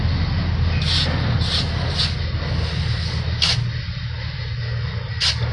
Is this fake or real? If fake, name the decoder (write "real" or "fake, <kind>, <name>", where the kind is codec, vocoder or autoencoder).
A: real